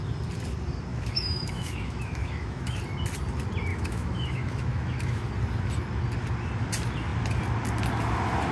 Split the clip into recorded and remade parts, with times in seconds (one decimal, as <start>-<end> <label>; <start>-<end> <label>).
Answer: 0.0-0.9 recorded; 0.9-2.8 remade; 2.8-3.7 recorded; 3.7-5.3 remade; 5.3-8.5 recorded